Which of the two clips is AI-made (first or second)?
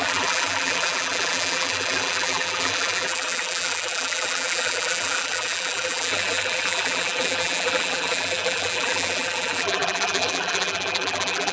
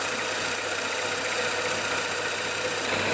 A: first